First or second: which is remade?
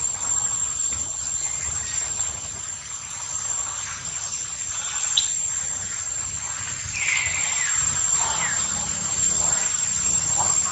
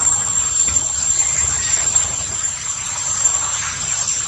second